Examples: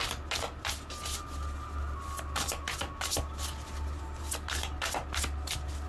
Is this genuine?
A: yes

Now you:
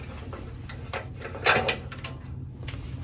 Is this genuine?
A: yes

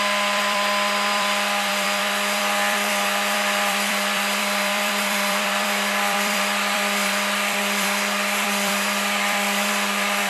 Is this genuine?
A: no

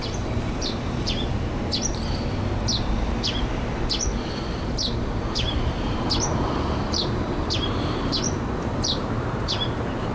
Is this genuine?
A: no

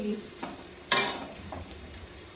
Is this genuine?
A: no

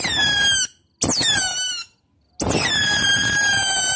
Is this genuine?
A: yes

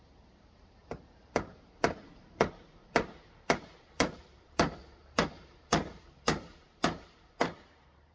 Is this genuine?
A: no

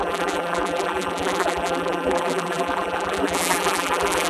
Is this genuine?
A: no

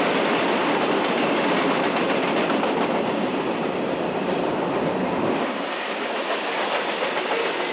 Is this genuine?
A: no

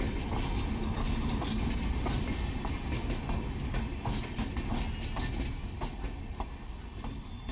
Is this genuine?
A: yes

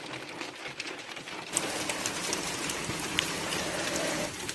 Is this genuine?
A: no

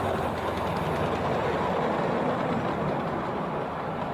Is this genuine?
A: yes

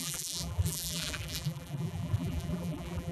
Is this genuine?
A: no